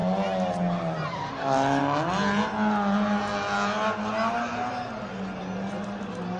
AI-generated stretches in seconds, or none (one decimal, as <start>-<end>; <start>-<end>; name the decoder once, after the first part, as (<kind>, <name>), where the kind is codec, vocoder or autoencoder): none